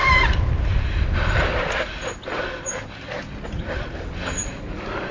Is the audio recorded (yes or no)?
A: yes